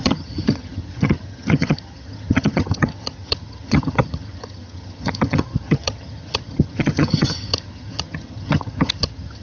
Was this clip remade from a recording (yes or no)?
yes